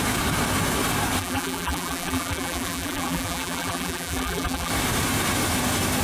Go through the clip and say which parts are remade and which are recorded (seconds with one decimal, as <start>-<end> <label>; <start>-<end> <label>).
0.0-1.2 recorded; 1.2-4.7 remade; 4.7-6.0 recorded